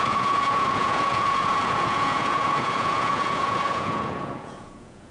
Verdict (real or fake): fake